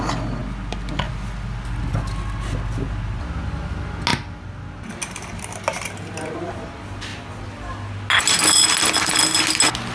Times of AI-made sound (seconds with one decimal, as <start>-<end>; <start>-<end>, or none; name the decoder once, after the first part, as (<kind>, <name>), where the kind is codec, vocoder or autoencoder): none